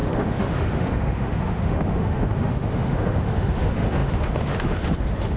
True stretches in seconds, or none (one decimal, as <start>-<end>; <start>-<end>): none